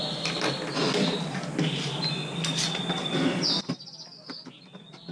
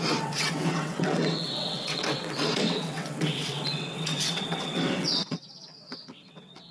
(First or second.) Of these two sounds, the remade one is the second